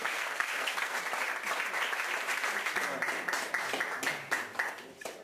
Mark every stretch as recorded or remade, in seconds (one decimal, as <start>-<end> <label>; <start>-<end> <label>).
0.0-1.0 remade; 1.0-5.2 recorded